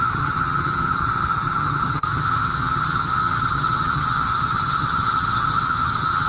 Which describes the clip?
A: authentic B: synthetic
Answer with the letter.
B